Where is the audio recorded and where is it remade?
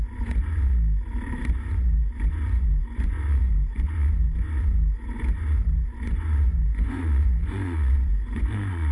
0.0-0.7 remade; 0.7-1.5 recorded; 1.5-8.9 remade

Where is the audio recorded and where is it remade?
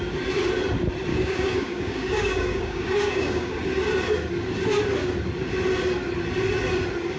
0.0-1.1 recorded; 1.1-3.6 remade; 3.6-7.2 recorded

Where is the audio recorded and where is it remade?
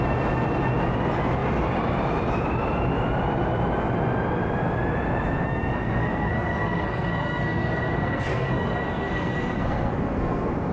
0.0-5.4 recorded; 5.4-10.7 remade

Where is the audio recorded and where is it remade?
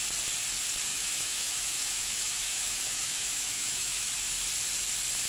0.0-0.9 recorded; 0.9-4.1 remade; 4.1-5.3 recorded